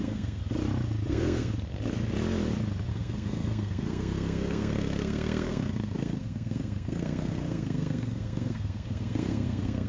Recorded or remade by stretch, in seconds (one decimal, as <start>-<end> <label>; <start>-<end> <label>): 0.0-0.4 remade; 0.4-1.1 recorded; 1.1-1.5 remade; 1.5-2.9 recorded; 2.9-9.9 remade